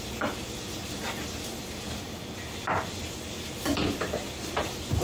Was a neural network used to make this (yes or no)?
no